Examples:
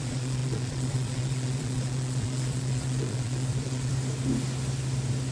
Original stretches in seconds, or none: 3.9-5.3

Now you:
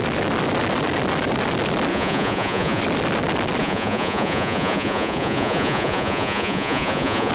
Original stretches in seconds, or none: 0.0-1.9; 2.8-3.6

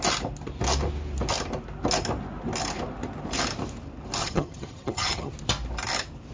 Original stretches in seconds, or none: 0.0-4.2; 5.3-6.3

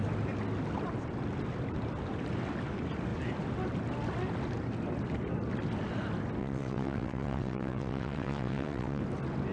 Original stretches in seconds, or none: 0.0-6.4; 9.0-9.5